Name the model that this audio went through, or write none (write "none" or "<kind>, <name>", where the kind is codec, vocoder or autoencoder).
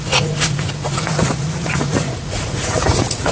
vocoder, Vocos